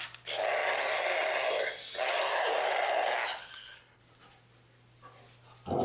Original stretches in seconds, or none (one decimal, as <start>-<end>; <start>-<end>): 0.0-3.3; 4.0-5.8